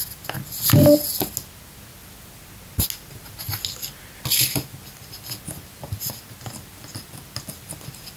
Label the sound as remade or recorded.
recorded